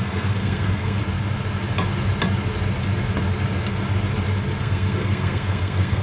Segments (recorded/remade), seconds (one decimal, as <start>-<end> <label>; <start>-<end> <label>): 0.0-1.0 remade; 1.0-4.6 recorded; 4.6-6.0 remade